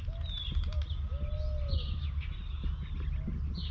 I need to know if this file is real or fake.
real